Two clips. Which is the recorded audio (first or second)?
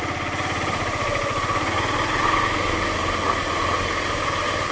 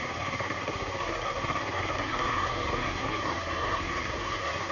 first